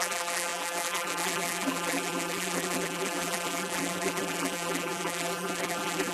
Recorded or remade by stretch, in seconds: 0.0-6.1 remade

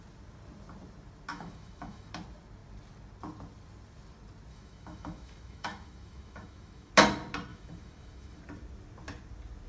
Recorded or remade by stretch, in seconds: 0.0-1.3 recorded; 1.3-2.1 remade; 2.1-4.5 recorded; 4.5-6.9 remade; 6.9-7.5 recorded; 7.5-8.4 remade; 8.4-9.7 recorded

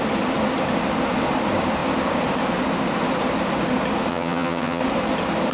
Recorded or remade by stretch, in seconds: 0.0-4.1 recorded; 4.1-4.8 remade; 4.8-5.5 recorded